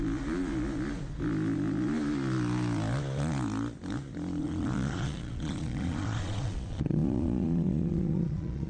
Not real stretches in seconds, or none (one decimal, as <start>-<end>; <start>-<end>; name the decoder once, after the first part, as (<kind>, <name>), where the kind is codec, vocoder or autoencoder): 4.4-8.7 (vocoder, Vocos)

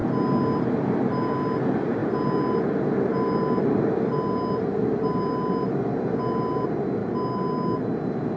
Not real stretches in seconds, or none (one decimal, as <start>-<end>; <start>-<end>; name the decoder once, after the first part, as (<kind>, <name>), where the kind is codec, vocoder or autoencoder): none

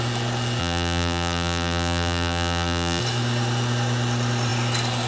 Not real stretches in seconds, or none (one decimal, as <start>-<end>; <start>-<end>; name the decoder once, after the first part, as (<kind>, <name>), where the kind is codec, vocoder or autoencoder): 0.6-3.0 (vocoder, BigVGAN v2)